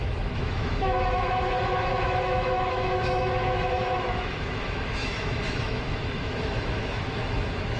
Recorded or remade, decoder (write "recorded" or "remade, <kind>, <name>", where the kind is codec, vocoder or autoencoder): remade, autoencoder, DAC-VAE